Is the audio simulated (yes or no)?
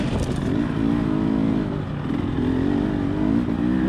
no